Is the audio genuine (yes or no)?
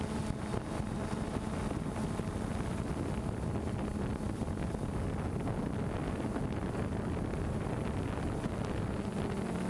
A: yes